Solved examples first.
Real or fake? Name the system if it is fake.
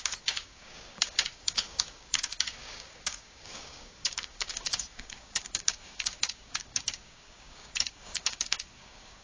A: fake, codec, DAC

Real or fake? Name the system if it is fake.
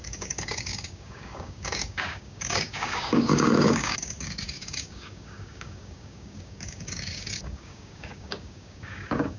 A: fake, codec, DAC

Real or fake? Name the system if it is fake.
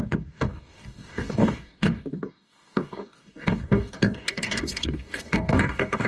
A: fake, codec, DAC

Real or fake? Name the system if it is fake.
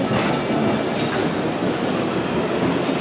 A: real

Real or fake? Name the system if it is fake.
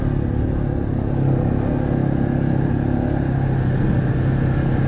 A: real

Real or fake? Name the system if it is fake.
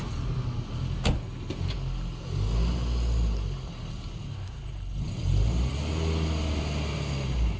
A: real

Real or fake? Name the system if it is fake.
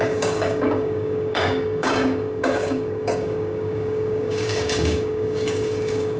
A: fake, codec, DAC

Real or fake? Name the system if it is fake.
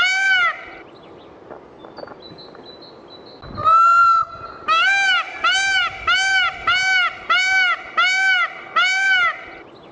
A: real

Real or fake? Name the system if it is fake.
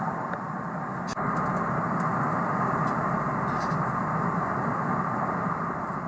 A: real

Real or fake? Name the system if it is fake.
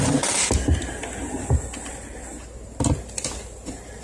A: real